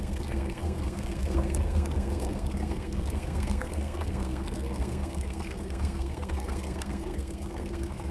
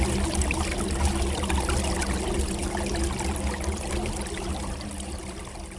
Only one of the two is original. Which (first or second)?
second